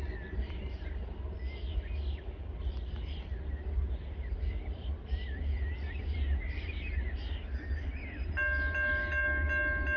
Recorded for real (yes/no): yes